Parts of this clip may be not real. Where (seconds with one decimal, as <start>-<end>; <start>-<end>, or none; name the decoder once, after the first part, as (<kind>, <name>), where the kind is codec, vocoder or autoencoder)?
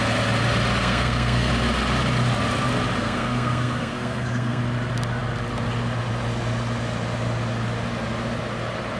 0.8-1.5 (codec, SNAC); 3.0-4.6